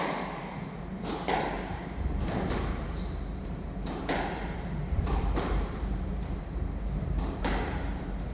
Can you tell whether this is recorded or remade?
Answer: remade